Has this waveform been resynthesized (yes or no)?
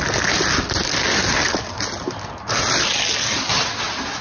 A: no